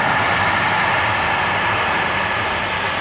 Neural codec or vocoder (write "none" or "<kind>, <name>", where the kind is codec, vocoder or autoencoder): none